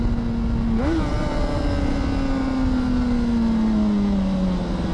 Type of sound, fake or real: real